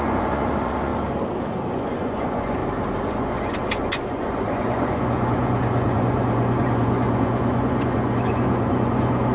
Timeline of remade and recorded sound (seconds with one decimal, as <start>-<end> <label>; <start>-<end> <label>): 0.0-0.9 remade; 0.9-1.7 recorded; 1.7-2.6 remade; 2.6-3.1 recorded; 3.1-9.3 remade